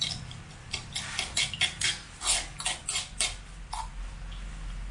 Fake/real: real